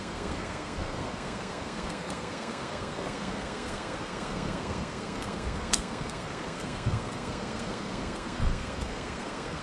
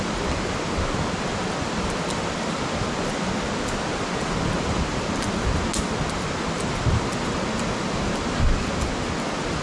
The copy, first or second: first